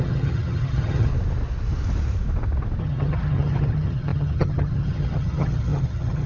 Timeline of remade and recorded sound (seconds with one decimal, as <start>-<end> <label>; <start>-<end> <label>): 0.0-1.1 remade; 1.1-2.8 recorded; 2.8-6.3 remade